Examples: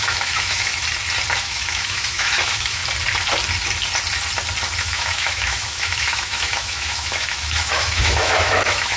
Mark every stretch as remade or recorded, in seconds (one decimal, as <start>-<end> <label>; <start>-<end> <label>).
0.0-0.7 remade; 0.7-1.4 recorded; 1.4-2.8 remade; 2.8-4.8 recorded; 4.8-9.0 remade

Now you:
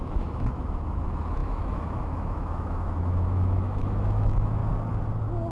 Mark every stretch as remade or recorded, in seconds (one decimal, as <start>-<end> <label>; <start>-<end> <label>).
0.0-4.6 remade; 4.6-5.5 recorded

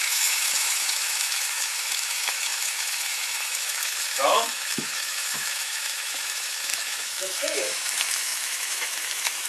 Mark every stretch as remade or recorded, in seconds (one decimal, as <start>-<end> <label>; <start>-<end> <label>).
0.0-9.5 remade

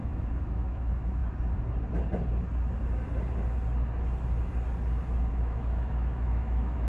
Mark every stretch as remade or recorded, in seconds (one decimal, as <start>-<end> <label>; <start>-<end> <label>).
0.0-1.2 remade; 1.2-5.3 recorded; 5.3-6.9 remade